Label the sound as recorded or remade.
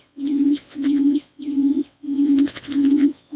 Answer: remade